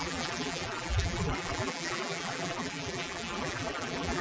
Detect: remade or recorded remade